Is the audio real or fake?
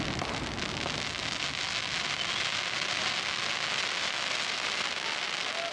real